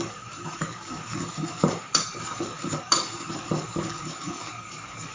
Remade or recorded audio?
remade